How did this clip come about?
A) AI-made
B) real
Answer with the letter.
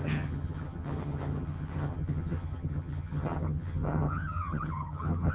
A